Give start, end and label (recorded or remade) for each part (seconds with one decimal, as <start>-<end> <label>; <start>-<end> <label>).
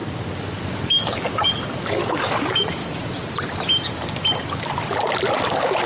0.0-0.5 recorded; 0.5-2.8 remade; 2.8-5.4 recorded; 5.4-5.9 remade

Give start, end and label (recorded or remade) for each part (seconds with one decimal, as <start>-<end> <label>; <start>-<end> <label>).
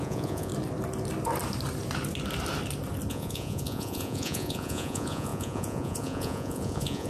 0.0-0.5 remade; 0.5-3.1 recorded; 3.1-7.1 remade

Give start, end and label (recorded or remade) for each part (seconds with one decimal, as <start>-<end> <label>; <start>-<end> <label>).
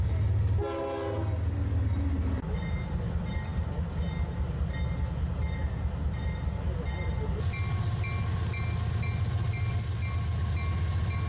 0.0-11.3 recorded